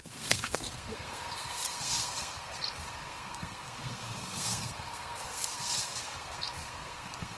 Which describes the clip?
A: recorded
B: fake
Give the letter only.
B